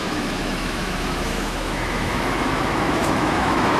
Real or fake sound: fake